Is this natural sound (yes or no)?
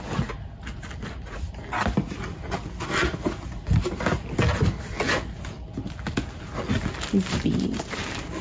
yes